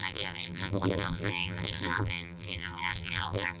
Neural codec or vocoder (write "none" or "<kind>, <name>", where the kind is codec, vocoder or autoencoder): vocoder, BigVGAN v2